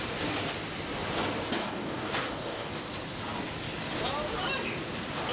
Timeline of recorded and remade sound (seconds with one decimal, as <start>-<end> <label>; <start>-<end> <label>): 0.0-1.6 recorded; 1.6-2.8 remade; 2.8-5.3 recorded